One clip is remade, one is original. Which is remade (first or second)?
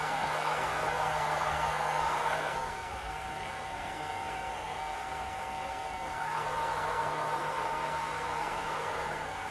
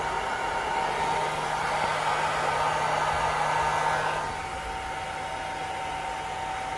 first